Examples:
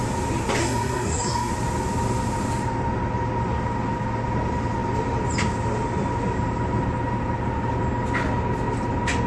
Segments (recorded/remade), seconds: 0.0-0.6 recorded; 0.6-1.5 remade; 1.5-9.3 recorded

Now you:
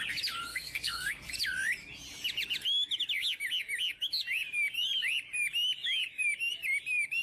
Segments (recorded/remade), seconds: 0.0-0.5 recorded; 0.5-1.3 remade; 1.3-7.2 recorded

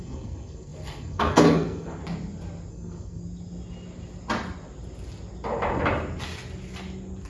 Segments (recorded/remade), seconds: 0.0-2.0 remade; 2.0-2.7 recorded; 2.7-3.2 remade; 3.2-7.3 recorded

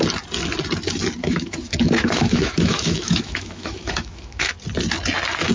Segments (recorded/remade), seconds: 0.0-1.2 recorded; 1.2-4.5 remade; 4.5-5.5 recorded

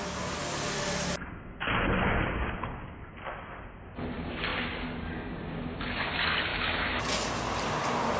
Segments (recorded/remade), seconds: 0.0-6.5 recorded; 6.5-7.0 remade; 7.0-8.2 recorded

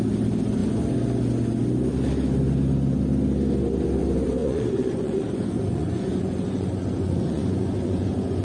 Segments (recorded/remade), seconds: 0.0-4.4 recorded; 4.4-8.4 remade